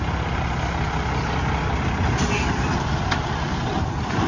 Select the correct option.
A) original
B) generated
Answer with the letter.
A